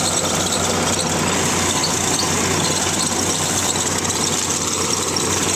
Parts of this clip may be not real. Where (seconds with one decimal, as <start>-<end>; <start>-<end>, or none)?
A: none